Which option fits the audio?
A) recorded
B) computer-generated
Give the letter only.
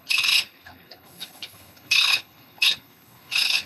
B